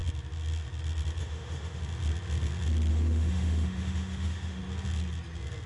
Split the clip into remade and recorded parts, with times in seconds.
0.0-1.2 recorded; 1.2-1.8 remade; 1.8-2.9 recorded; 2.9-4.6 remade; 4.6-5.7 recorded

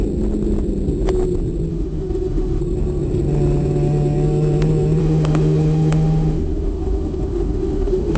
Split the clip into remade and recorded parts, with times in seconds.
0.0-1.7 recorded; 1.7-2.6 remade; 2.6-5.0 recorded; 5.0-8.2 remade

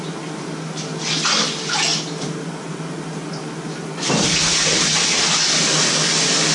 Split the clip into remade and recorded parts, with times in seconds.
0.0-6.5 recorded